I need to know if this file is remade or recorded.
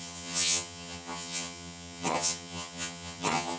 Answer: remade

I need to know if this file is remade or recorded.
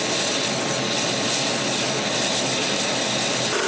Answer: recorded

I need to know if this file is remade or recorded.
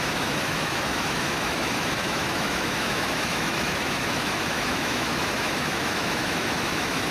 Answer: remade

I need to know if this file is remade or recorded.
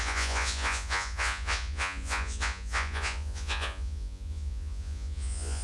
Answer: remade